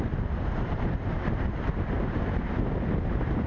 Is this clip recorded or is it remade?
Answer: remade